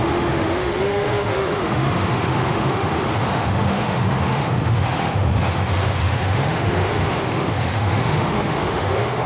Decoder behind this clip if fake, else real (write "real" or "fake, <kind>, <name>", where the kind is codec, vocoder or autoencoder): fake, autoencoder, DAC-VAE